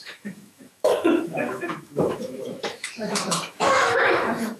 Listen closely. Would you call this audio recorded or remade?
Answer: remade